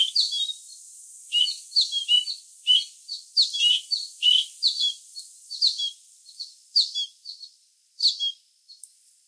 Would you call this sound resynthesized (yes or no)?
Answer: no